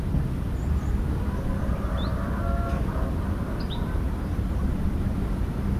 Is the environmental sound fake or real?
real